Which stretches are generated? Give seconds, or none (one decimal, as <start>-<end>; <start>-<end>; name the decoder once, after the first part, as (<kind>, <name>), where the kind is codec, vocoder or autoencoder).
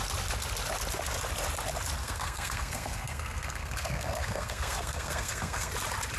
2.0-5.7 (codec, SNAC)